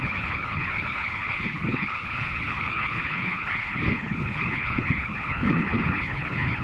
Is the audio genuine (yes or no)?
no